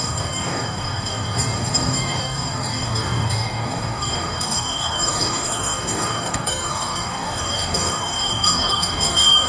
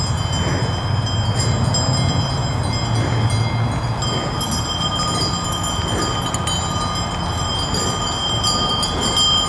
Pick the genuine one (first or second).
second